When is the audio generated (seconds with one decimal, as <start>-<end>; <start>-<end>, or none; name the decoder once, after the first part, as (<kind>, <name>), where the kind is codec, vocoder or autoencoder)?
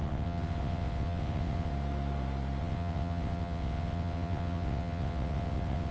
0.0-1.7 (vocoder, WaveNeXt); 2.6-5.9